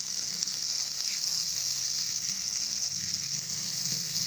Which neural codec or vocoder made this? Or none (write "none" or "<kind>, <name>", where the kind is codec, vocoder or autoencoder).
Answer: codec, SNAC